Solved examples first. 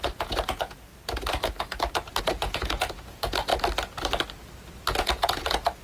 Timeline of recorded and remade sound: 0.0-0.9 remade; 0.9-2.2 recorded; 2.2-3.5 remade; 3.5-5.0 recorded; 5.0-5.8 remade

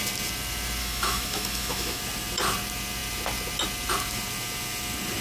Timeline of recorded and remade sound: 0.0-0.8 recorded; 0.8-2.0 remade; 2.0-5.2 recorded

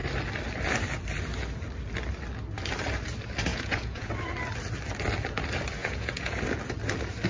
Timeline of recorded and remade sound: 0.0-3.5 recorded; 3.5-4.1 remade; 4.1-5.8 recorded; 5.8-6.4 remade; 6.4-7.3 recorded

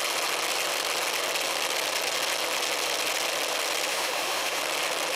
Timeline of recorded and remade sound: 0.0-3.9 recorded; 3.9-4.6 remade; 4.6-5.2 recorded

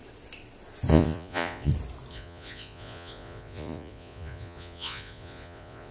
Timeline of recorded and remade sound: 0.0-0.9 recorded; 0.9-1.7 remade; 1.7-2.1 recorded; 2.1-5.9 remade

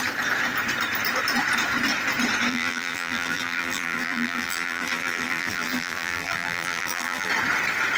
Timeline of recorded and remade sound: 0.0-2.5 recorded; 2.5-7.3 remade; 7.3-8.0 recorded